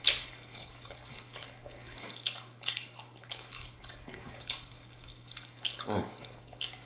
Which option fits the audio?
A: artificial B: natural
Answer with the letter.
A